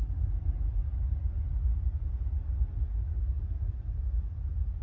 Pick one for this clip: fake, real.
real